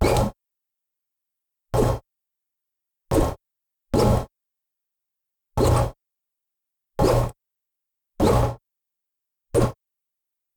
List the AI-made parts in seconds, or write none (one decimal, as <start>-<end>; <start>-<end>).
none